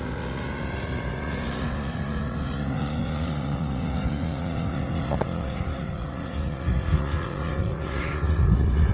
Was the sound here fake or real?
fake